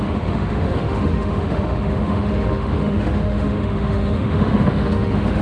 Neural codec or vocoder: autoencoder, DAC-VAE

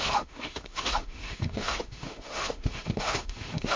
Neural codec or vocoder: autoencoder, DAC-VAE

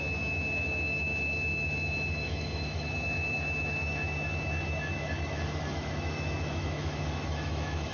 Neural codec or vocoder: autoencoder, DAC-VAE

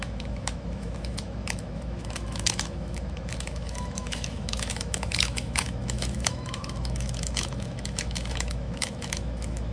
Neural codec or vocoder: autoencoder, DAC-VAE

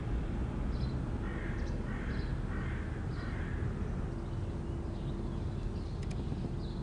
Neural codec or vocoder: none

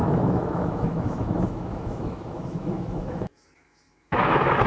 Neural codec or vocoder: autoencoder, DAC-VAE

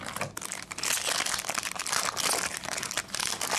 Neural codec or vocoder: none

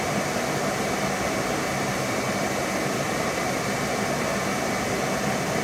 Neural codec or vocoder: none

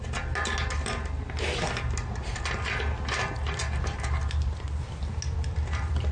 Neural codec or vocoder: none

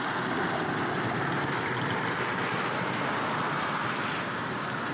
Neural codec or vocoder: none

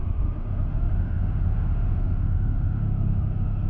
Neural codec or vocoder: autoencoder, DAC-VAE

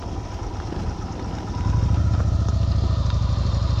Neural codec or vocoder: none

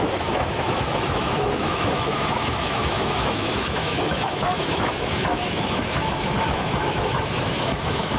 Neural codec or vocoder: autoencoder, DAC-VAE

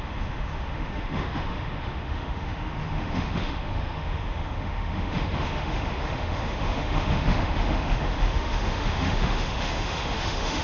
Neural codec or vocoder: autoencoder, DAC-VAE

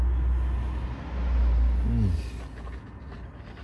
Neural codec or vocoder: none